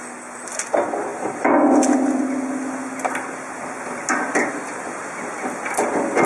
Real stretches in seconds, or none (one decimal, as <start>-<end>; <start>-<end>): 0.0-6.3